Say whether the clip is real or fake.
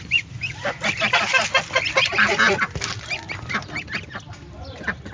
real